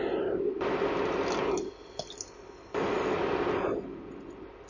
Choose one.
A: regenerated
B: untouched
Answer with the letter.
B